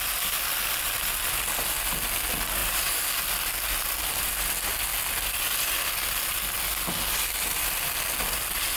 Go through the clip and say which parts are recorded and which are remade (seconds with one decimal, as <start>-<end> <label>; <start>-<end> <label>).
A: 0.0-8.8 recorded